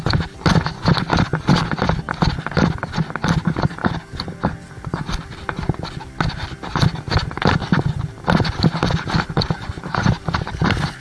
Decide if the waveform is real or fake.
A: real